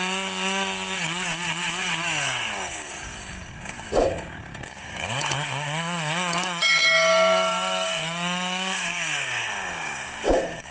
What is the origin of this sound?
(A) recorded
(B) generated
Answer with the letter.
B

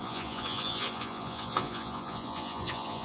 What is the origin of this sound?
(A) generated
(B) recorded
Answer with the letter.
A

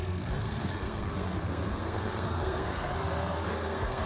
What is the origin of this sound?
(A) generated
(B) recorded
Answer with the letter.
A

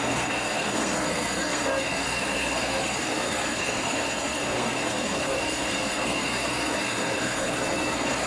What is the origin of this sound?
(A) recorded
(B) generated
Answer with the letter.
B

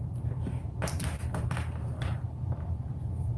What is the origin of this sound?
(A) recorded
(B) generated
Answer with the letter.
A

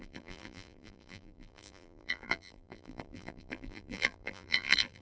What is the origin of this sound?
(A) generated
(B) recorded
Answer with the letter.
A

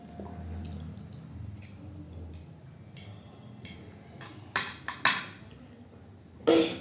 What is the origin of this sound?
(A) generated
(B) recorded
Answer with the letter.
B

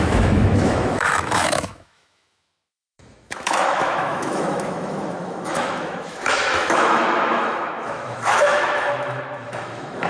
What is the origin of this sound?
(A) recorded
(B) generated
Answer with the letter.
B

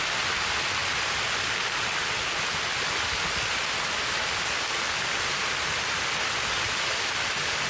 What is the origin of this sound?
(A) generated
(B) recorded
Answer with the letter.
B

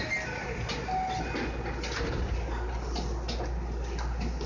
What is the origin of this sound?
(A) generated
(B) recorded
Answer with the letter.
B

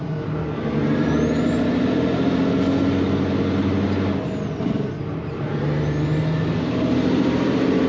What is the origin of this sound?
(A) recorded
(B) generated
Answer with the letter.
A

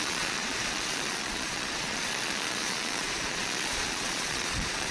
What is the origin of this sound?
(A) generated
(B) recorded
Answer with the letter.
A